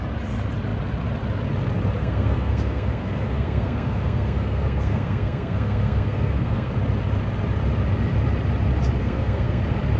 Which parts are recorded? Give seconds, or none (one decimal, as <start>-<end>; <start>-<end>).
0.0-2.0; 6.7-9.0; 9.6-10.0